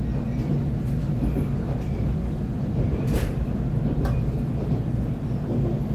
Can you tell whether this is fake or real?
real